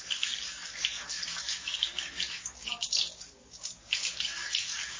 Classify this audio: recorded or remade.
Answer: remade